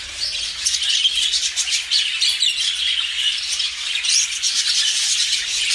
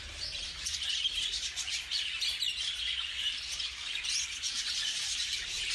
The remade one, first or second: second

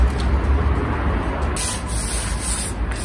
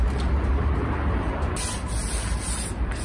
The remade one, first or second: second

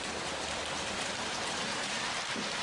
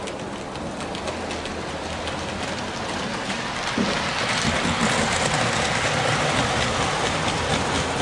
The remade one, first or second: first